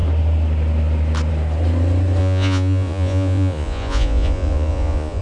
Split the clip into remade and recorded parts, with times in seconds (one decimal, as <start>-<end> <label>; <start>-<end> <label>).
0.0-2.2 recorded; 2.2-5.2 remade